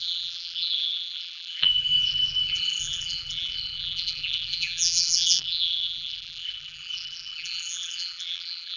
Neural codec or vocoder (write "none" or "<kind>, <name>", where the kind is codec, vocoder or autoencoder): vocoder, BigVGAN v2